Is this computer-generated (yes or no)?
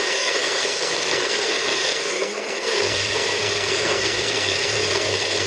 yes